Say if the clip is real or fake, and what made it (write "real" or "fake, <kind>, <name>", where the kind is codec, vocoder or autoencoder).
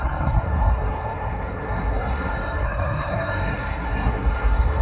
fake, codec, SNAC